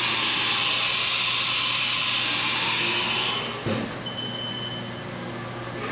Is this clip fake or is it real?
real